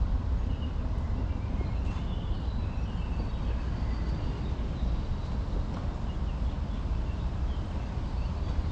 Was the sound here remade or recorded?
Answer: recorded